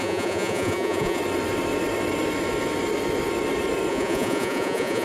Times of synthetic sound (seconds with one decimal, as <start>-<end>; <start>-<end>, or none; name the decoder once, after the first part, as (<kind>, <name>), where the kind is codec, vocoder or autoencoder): 0.0-1.2 (vocoder, Vocos); 3.9-5.0